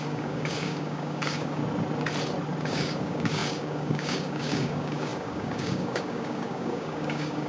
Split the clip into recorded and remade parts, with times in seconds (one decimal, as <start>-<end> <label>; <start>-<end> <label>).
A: 0.0-1.6 remade; 1.6-2.6 recorded; 2.6-7.5 remade